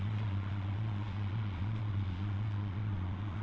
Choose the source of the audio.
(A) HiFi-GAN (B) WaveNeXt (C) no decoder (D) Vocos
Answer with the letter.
D